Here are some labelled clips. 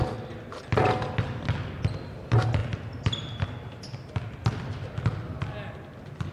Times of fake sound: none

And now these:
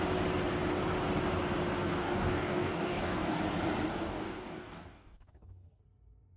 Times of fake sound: 2.0-3.4 (codec, DAC); 3.9-5.8

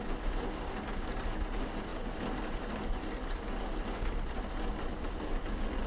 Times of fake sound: none

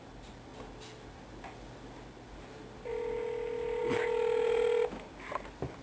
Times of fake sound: 0.0-0.5 (vocoder, BigVGAN v2); 2.3-2.9; 3.8-5.8

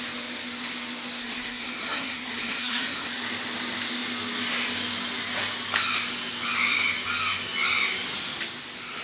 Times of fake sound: 1.2-3.2 (codec, SNAC)

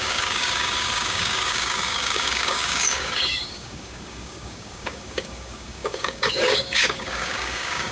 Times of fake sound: 0.0-7.9 (codec, DAC)

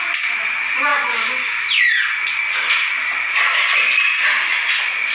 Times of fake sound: none

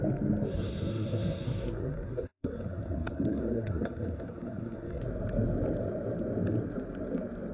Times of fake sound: 0.5-5.0 (codec, SNAC)